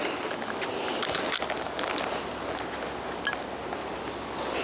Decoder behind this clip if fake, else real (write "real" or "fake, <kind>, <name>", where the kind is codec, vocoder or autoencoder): real